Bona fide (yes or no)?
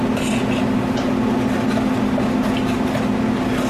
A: yes